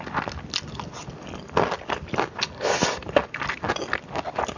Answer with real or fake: real